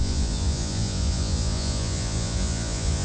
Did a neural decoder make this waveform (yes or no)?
yes